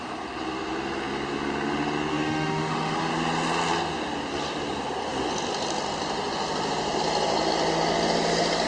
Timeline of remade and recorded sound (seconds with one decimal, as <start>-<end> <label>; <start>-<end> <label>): 0.0-2.1 recorded; 2.1-3.1 remade; 3.1-8.7 recorded